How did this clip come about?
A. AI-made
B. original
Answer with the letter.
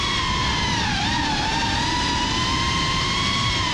A